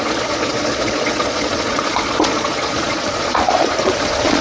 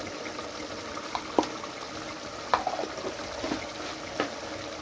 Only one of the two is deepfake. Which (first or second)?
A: first